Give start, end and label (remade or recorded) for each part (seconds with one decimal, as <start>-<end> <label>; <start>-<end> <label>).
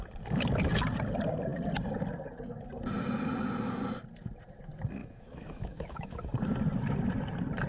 0.0-5.0 recorded; 5.0-6.2 remade; 6.2-7.7 recorded